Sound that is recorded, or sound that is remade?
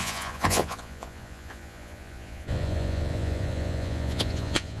remade